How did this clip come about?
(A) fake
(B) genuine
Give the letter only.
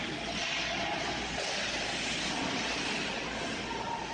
B